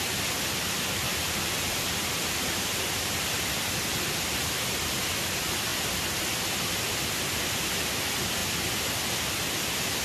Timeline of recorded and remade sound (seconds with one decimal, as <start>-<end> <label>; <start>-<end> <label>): 0.0-1.7 recorded; 1.7-3.8 remade; 3.8-8.4 recorded; 8.4-8.9 remade; 8.9-10.0 recorded